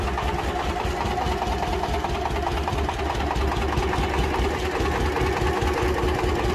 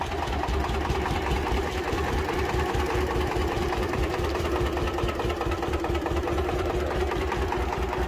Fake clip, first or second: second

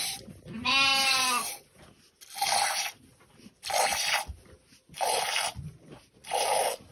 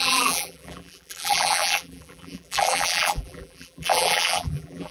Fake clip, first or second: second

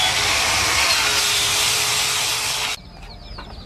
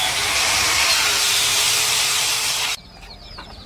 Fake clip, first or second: second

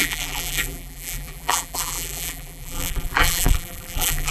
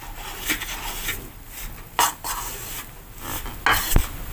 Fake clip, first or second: first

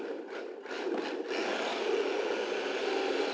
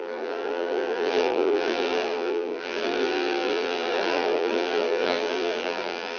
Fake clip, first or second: second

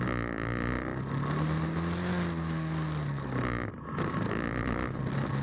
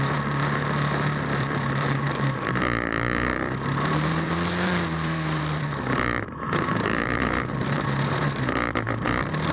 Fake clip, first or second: second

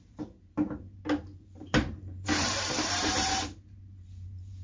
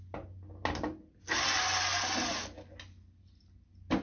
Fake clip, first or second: first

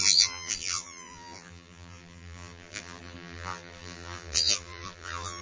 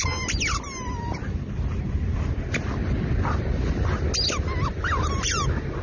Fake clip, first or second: first